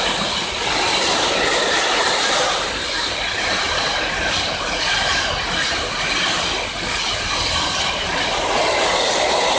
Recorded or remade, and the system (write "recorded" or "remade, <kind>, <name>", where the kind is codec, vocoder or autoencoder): recorded